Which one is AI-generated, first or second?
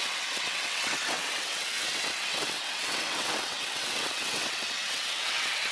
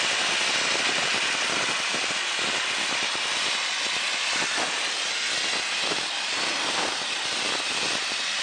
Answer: first